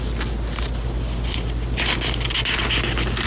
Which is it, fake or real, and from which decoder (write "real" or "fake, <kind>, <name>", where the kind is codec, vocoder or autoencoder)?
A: real